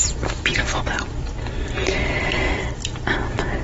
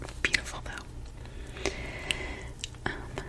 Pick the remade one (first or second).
first